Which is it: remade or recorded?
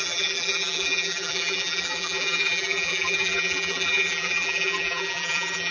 remade